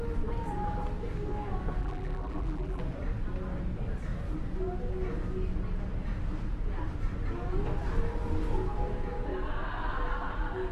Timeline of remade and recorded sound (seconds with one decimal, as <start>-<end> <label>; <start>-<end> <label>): 0.0-1.8 recorded; 1.8-2.8 remade; 2.8-10.7 recorded